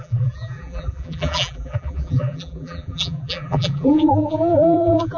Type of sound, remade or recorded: remade